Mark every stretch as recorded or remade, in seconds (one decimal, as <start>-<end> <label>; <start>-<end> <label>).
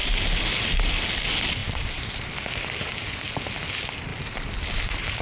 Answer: 0.0-1.6 recorded; 1.6-3.0 remade; 3.0-4.1 recorded; 4.1-5.2 remade